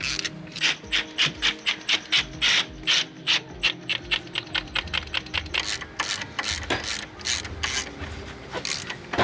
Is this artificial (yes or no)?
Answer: no